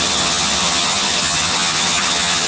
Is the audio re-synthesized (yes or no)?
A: yes